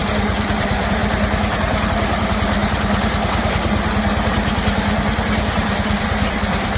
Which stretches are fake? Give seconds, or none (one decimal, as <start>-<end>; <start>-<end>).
0.0-2.6; 5.3-6.8

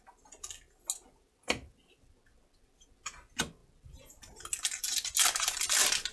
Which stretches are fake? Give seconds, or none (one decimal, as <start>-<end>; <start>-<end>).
none

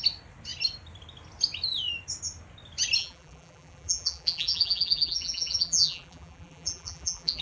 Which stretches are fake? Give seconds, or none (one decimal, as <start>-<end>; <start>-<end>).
3.0-7.4

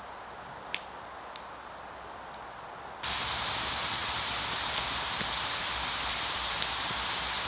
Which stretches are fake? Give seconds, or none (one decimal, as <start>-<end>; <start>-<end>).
none

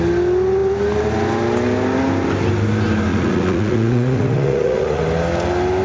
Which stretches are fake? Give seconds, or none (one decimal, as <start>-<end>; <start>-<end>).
3.1-5.0

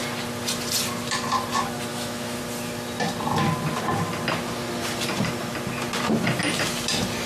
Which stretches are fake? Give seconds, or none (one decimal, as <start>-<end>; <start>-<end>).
1.9-2.4

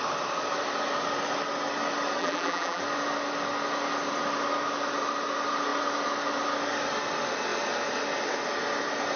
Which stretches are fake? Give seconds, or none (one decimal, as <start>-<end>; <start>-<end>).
2.2-2.8

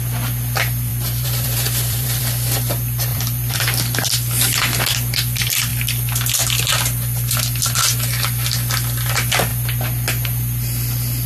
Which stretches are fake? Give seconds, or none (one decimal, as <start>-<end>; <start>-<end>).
0.9-2.2; 3.1-3.6